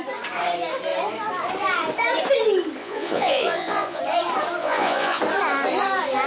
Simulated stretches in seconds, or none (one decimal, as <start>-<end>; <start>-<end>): 2.8-4.0; 4.6-5.2